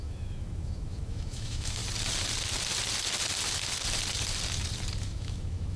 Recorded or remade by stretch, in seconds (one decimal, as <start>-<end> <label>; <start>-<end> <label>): 0.0-1.8 remade; 1.8-5.0 recorded; 5.0-5.8 remade